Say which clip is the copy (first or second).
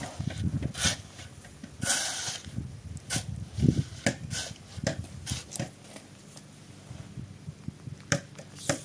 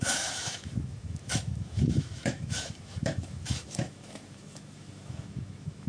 second